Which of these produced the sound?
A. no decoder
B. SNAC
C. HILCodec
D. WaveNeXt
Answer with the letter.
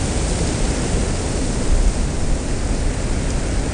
A